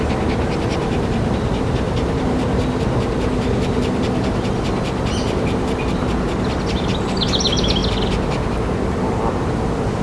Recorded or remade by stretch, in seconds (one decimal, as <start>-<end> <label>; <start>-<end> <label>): 0.0-10.0 recorded

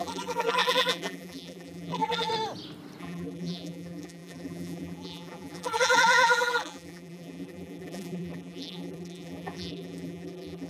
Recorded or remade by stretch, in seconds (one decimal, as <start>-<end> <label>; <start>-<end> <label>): 0.0-2.3 remade; 2.3-3.0 recorded; 3.0-10.7 remade

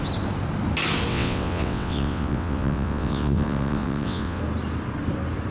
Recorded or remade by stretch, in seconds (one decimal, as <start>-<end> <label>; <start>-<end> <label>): 0.0-1.1 recorded; 1.1-4.4 remade; 4.4-5.5 recorded

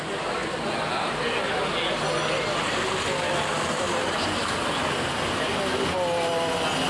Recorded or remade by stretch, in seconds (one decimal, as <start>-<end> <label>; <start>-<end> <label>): 0.0-6.9 recorded

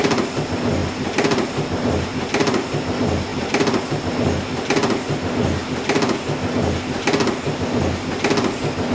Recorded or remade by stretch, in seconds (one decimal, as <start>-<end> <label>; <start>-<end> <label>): 0.0-8.9 recorded

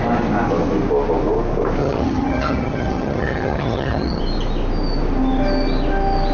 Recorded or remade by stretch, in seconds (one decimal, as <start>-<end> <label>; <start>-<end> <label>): 0.0-1.8 recorded; 1.8-4.2 remade; 4.2-6.3 recorded

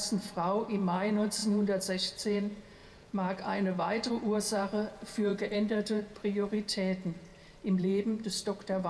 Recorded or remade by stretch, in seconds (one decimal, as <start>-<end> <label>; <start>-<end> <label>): 0.0-7.3 remade; 7.3-7.8 recorded; 7.8-8.9 remade